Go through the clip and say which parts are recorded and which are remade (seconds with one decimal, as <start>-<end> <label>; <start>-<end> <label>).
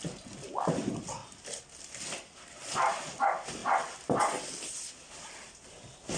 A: 0.0-6.2 recorded